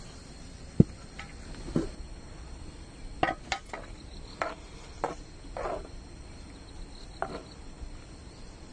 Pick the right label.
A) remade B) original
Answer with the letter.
B